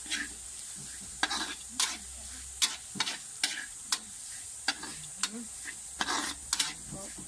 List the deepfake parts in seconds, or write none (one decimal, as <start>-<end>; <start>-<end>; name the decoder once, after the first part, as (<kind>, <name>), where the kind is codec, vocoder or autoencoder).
none